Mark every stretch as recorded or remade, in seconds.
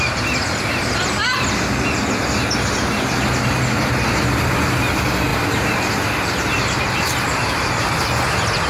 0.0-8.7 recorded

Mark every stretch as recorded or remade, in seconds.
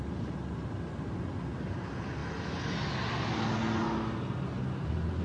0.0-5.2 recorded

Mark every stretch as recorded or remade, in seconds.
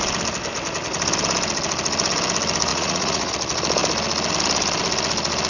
0.0-2.7 recorded; 2.7-3.3 remade; 3.3-5.5 recorded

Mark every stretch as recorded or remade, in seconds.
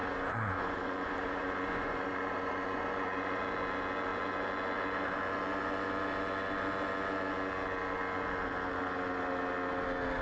0.0-3.4 remade; 3.4-10.2 recorded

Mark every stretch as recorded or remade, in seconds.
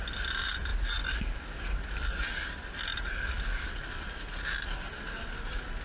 0.0-5.8 recorded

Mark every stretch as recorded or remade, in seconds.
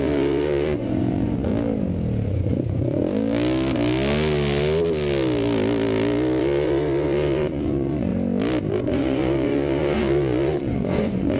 0.0-1.5 remade; 1.5-2.3 recorded; 2.3-3.0 remade; 3.0-6.4 recorded; 6.4-8.1 remade; 8.1-8.8 recorded; 8.8-11.4 remade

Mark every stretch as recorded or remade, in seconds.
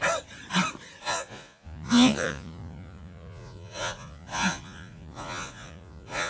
0.0-1.0 recorded; 1.0-6.3 remade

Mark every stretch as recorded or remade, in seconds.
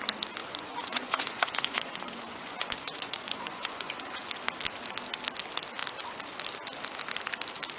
0.0-0.4 recorded; 0.4-4.3 remade; 4.3-7.8 recorded